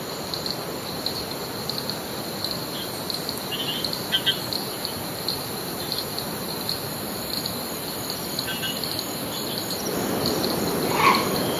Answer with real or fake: real